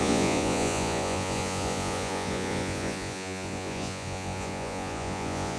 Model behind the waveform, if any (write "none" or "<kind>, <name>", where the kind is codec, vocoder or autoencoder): vocoder, Vocos